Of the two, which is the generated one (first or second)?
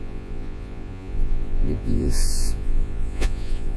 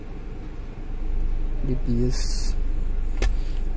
first